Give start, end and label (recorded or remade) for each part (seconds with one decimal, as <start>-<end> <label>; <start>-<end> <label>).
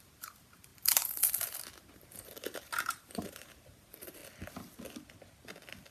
0.0-4.2 remade; 4.2-5.9 recorded